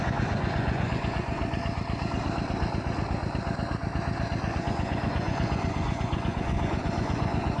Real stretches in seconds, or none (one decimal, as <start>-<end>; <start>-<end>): 1.4-4.6